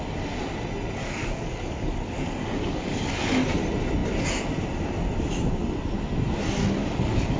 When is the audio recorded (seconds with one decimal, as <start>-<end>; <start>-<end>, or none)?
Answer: 0.0-1.0; 3.2-6.6